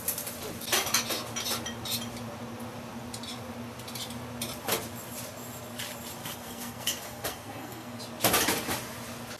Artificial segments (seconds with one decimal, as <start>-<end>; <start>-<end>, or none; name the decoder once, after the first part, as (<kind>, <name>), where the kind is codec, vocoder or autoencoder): 6.2-8.0 (codec, SNAC)